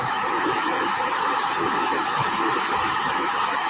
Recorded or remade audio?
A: remade